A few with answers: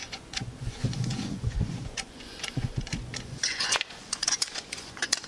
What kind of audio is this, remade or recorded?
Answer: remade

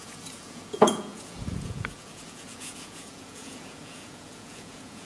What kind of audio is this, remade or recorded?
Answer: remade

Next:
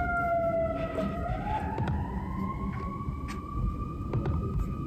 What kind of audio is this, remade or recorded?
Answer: recorded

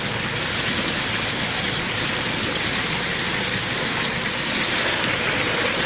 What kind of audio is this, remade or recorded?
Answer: recorded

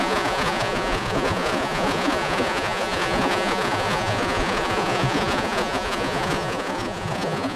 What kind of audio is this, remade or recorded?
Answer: remade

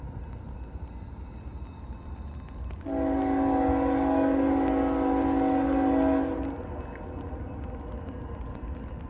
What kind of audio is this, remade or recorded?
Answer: recorded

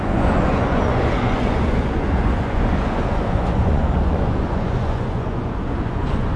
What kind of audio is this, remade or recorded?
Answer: remade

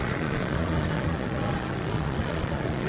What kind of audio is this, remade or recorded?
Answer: remade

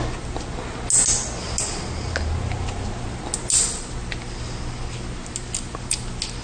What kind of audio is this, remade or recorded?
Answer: recorded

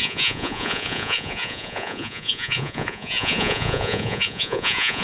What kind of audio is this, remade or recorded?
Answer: remade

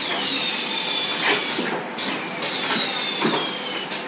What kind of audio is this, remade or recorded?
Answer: recorded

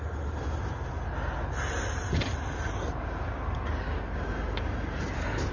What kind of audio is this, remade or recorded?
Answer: recorded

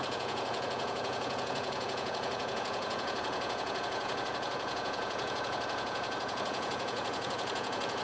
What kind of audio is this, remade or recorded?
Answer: remade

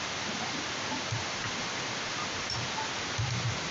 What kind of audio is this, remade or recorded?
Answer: recorded